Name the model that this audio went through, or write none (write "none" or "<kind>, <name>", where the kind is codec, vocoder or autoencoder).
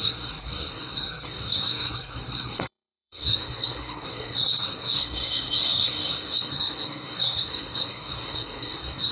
codec, SNAC